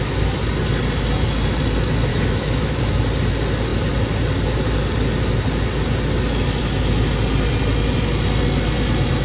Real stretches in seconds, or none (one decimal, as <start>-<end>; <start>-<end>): 0.0-2.1; 2.8-9.2